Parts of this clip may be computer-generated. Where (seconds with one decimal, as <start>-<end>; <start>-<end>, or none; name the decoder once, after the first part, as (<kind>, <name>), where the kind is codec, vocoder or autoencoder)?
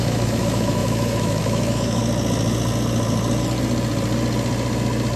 0.0-2.0 (autoencoder, DAC-VAE)